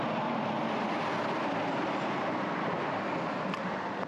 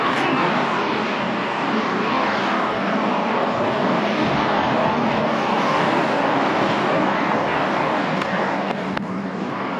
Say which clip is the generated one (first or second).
second